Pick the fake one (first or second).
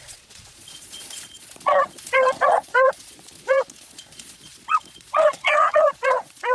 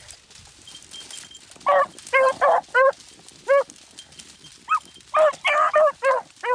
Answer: first